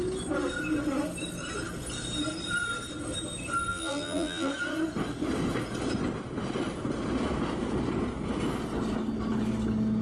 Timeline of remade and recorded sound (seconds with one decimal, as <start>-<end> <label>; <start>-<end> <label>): 0.0-3.7 recorded; 3.7-4.5 remade; 4.5-10.0 recorded